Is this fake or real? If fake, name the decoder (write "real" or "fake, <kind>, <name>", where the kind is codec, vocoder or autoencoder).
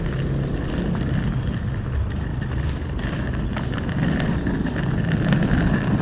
real